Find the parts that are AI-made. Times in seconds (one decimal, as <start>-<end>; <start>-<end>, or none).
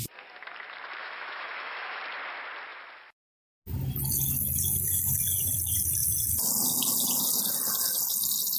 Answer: 1.0-2.0